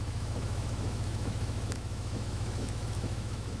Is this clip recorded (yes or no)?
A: no